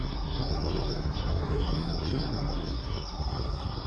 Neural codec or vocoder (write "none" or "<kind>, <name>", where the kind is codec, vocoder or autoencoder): codec, SNAC